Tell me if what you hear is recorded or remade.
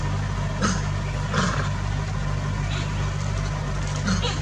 recorded